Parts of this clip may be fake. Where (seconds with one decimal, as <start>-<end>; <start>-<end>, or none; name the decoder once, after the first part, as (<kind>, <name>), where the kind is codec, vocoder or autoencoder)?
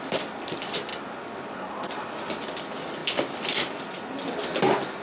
none